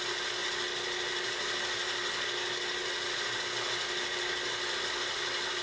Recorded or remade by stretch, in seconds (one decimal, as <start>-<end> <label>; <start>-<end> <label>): 0.0-5.6 recorded